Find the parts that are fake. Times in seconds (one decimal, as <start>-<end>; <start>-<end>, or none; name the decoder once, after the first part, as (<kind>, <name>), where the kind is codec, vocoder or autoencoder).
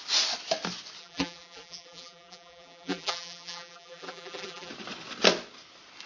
1.0-4.7 (vocoder, BigVGAN v2)